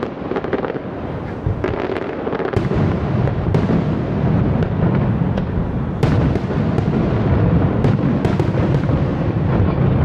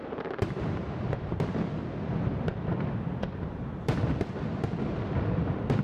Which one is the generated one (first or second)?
second